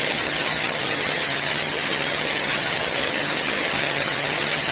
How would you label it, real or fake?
fake